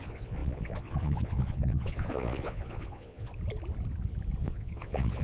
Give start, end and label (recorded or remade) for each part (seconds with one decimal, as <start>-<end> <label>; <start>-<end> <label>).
0.0-3.3 remade; 3.3-4.4 recorded; 4.4-5.2 remade